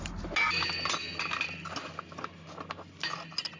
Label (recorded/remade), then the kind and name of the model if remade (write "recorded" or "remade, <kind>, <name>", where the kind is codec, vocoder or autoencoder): recorded